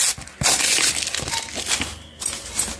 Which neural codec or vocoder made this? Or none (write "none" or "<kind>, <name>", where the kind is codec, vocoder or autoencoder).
none